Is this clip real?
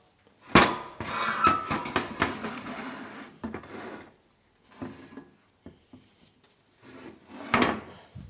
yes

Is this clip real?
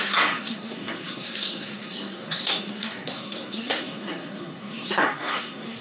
no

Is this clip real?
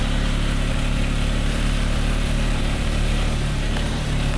no